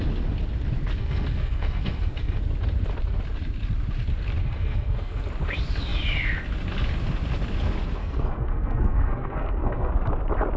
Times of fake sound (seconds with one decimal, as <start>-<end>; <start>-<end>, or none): 1.0-2.4; 4.4-5.2; 8.0-9.9